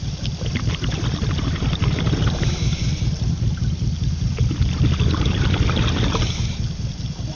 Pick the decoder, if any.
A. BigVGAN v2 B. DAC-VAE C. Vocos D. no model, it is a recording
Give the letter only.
D